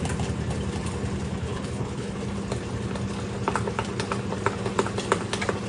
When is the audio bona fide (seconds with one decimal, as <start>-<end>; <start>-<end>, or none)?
0.0-1.4; 2.1-5.7